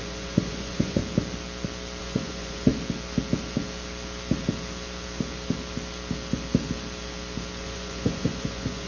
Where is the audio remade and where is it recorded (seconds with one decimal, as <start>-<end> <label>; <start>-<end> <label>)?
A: 0.0-1.0 remade; 1.0-2.0 recorded; 2.0-2.7 remade; 2.7-7.6 recorded; 7.6-8.9 remade